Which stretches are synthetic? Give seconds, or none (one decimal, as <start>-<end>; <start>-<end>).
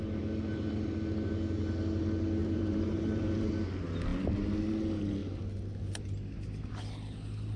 2.4-3.5